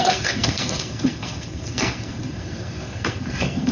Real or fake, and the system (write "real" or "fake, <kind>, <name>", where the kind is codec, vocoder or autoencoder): fake, codec, SNAC